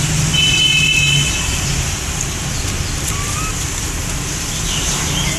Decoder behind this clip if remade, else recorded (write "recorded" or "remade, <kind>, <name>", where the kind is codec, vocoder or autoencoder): recorded